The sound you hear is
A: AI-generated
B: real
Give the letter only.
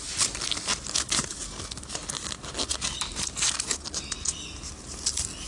B